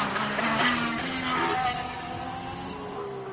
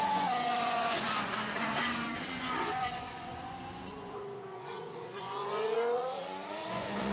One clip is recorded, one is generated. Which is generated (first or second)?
second